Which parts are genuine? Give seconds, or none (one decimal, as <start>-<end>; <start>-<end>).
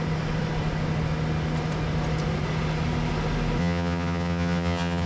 0.0-3.6